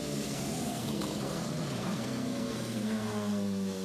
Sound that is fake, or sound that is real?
fake